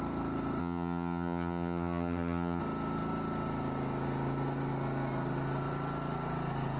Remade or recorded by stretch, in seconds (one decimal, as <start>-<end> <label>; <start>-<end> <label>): 0.0-0.6 recorded; 0.6-2.6 remade; 2.6-6.8 recorded